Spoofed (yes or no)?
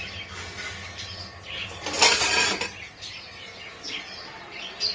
no